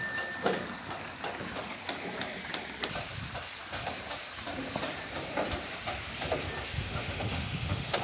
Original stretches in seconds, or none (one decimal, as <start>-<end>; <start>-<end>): 0.0-6.7